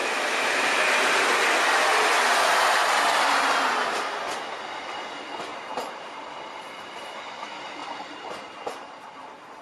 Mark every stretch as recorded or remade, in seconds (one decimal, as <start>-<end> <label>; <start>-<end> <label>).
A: 0.0-0.8 remade; 0.8-2.8 recorded; 2.8-4.2 remade; 4.2-5.5 recorded; 5.5-6.2 remade; 6.2-7.8 recorded; 7.8-8.3 remade; 8.3-9.6 recorded

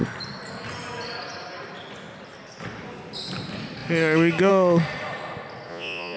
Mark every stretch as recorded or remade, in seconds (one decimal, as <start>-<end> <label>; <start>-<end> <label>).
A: 0.0-5.7 recorded; 5.7-6.2 remade

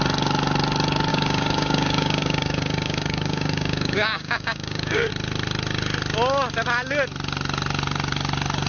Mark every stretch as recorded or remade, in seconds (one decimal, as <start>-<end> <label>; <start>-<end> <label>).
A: 0.0-1.1 recorded; 1.1-5.1 remade; 5.1-8.7 recorded

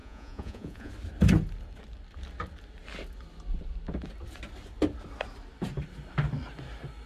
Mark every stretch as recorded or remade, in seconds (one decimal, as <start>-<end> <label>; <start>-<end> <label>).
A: 0.0-0.9 remade; 0.9-7.1 recorded